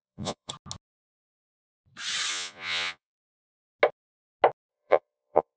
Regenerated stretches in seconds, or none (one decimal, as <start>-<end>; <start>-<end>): 0.0-0.5; 2.3-3.2; 4.7-5.6